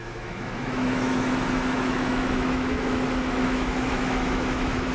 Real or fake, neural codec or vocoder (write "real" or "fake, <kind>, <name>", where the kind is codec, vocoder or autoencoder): fake, autoencoder, DAC-VAE